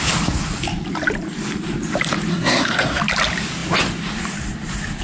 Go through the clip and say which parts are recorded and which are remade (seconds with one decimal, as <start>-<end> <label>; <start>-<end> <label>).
0.0-2.3 recorded; 2.3-3.0 remade; 3.0-5.0 recorded